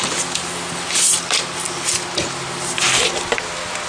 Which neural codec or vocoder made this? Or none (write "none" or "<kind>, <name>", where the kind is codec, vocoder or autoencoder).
none